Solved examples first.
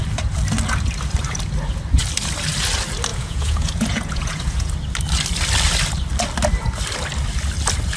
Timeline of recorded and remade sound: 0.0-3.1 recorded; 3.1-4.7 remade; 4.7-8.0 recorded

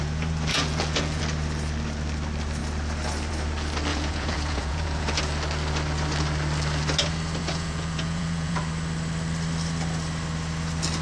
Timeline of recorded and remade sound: 0.0-0.5 recorded; 0.5-1.2 remade; 1.2-3.9 recorded; 3.9-5.2 remade; 5.2-7.4 recorded; 7.4-8.6 remade; 8.6-11.0 recorded

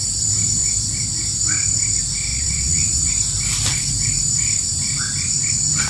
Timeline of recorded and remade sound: 0.0-2.3 recorded; 2.3-3.1 remade; 3.1-5.9 recorded

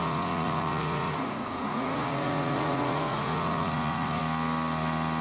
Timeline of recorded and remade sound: 0.0-4.2 remade; 4.2-5.2 recorded

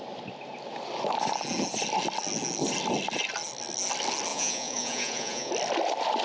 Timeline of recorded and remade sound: 0.0-4.3 recorded; 4.3-5.5 remade; 5.5-6.2 recorded

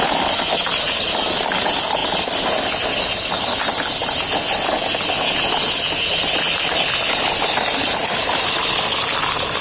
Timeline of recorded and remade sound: 0.0-9.6 recorded